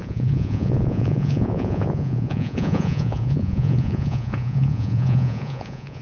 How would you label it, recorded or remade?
remade